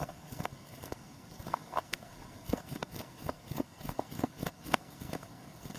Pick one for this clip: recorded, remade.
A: remade